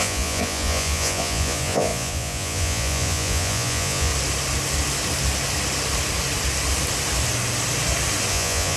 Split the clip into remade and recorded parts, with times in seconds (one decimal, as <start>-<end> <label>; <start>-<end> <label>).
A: 0.0-4.1 remade; 4.1-8.3 recorded; 8.3-8.8 remade